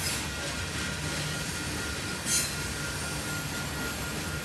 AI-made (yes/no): no